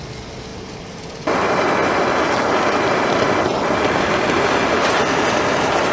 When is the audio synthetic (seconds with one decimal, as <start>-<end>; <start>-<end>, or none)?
0.5-1.2